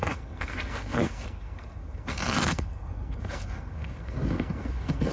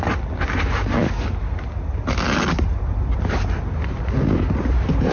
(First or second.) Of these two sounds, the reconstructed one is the first